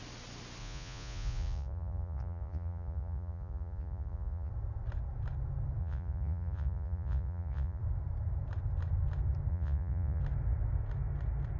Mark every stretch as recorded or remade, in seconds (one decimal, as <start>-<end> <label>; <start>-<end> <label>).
0.0-0.6 recorded; 0.6-4.5 remade; 4.5-5.8 recorded; 5.8-7.8 remade; 7.8-9.5 recorded; 9.5-10.2 remade; 10.2-11.6 recorded